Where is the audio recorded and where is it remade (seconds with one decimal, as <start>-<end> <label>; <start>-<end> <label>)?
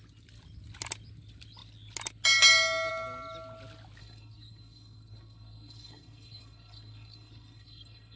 0.0-4.0 recorded; 4.0-8.2 remade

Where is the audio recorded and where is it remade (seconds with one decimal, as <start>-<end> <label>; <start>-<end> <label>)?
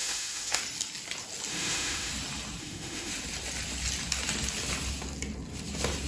0.0-0.6 remade; 0.6-1.5 recorded; 1.5-2.1 remade; 2.1-2.6 recorded; 2.6-3.1 remade; 3.1-6.1 recorded